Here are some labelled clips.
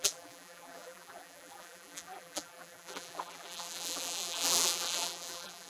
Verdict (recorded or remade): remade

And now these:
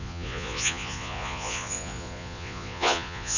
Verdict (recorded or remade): remade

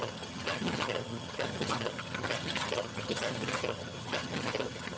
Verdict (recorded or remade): remade